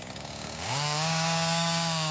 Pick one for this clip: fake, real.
fake